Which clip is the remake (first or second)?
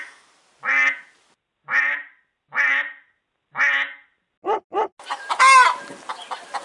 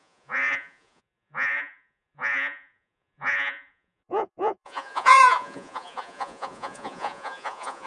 second